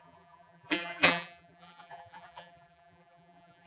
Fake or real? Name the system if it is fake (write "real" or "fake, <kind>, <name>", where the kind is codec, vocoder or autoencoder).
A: fake, vocoder, BigVGAN v2